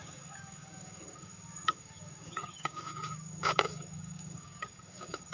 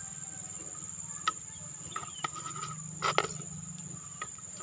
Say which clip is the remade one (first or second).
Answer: first